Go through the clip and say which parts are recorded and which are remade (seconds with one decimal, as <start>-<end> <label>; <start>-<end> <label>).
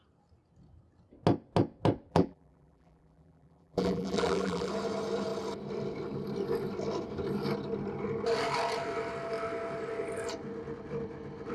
0.0-2.1 recorded; 2.1-4.7 remade; 4.7-11.5 recorded